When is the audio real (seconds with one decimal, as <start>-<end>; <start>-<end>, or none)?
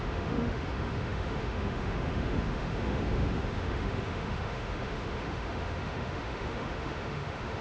none